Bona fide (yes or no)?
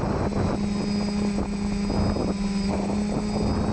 yes